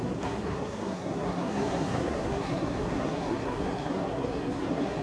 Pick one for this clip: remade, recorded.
remade